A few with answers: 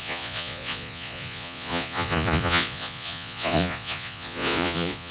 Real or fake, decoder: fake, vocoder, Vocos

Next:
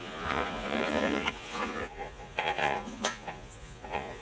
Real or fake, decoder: fake, vocoder, Vocos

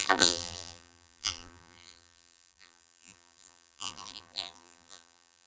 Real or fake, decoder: fake, vocoder, BigVGAN v2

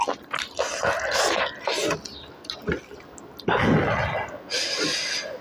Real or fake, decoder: real